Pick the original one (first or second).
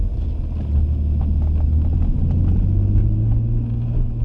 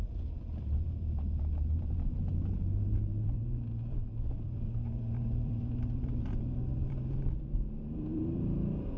first